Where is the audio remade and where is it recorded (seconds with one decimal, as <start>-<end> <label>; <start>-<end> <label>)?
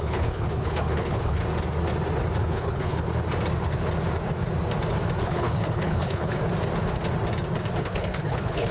0.0-1.4 remade; 1.4-2.4 recorded; 2.4-3.1 remade; 3.1-5.2 recorded; 5.2-6.4 remade; 6.4-7.8 recorded; 7.8-8.7 remade